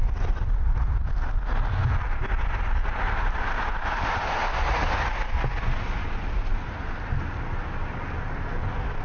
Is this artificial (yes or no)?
no